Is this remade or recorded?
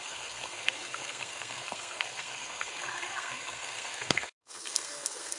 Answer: remade